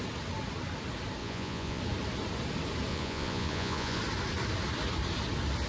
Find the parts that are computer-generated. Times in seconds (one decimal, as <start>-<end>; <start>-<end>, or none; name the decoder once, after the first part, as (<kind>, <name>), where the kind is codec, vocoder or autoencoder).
1.2-1.8 (vocoder, Vocos); 2.9-4.0